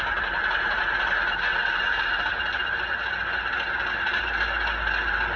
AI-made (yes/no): no